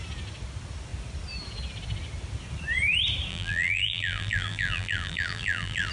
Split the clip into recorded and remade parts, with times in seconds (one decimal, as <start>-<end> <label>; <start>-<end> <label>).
0.0-3.3 recorded; 3.3-5.9 remade